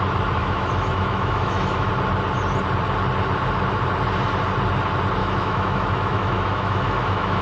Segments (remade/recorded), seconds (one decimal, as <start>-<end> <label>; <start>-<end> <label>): 0.0-0.4 recorded; 0.4-1.9 remade; 1.9-5.2 recorded; 5.2-7.4 remade

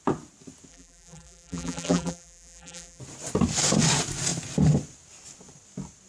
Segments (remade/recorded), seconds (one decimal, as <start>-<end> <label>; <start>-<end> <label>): 0.0-0.7 recorded; 0.7-3.0 remade; 3.0-6.1 recorded

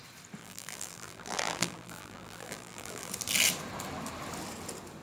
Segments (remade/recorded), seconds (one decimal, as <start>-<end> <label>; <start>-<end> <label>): 0.0-0.4 recorded; 0.4-3.1 remade; 3.1-5.0 recorded

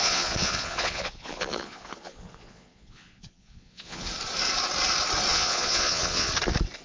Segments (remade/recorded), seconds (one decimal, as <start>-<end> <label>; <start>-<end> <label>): 0.0-4.1 remade; 4.1-5.3 recorded; 5.3-6.3 remade; 6.3-6.8 recorded